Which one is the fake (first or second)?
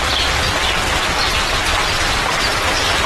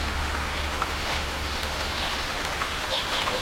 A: second